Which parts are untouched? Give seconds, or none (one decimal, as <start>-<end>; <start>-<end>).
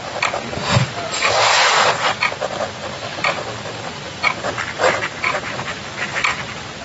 0.0-3.1; 6.3-6.8